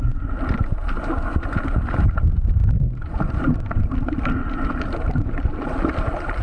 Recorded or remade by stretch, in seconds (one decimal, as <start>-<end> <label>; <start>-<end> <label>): 0.0-6.4 recorded